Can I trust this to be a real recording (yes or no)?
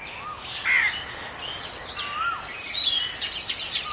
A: yes